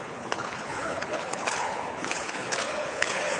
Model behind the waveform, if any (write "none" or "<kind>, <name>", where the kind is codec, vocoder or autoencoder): codec, HILCodec